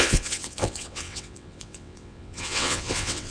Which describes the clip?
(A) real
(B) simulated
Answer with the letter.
B